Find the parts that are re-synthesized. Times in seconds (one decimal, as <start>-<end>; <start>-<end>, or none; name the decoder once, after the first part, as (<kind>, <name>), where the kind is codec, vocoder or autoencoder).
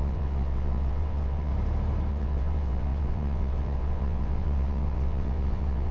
0.0-1.5 (vocoder, WaveNeXt); 2.1-5.9